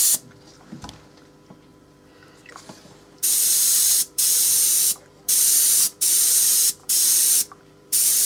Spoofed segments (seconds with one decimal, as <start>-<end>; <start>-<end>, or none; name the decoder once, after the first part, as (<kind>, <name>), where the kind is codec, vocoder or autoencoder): 1.7-6.1 (vocoder, BigVGAN v2); 6.8-8.2